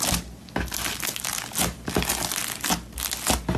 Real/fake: real